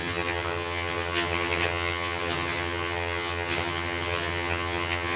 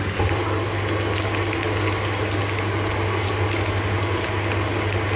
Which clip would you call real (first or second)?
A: second